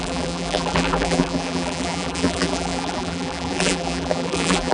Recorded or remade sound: remade